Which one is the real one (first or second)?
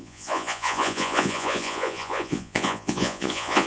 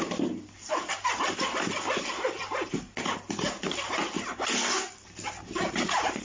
second